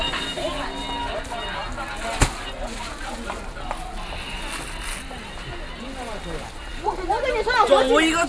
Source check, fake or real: real